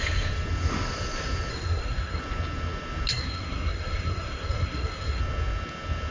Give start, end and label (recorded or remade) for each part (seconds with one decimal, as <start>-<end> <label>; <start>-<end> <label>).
0.0-1.5 recorded; 1.5-2.2 remade; 2.2-3.1 recorded; 3.1-5.2 remade; 5.2-6.1 recorded